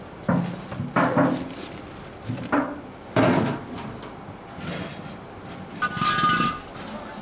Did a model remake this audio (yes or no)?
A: no